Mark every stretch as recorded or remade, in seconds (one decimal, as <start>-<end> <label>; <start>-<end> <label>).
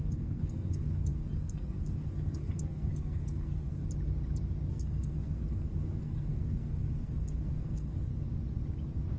0.0-3.8 remade; 3.8-4.7 recorded; 4.7-8.1 remade; 8.1-9.2 recorded